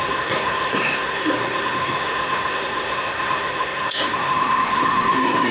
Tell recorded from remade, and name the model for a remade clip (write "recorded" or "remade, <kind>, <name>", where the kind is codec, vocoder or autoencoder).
remade, codec, SNAC